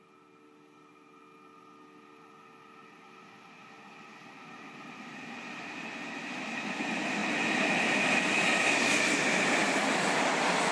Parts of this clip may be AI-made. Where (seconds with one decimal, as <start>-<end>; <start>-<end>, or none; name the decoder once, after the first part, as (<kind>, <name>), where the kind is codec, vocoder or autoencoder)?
none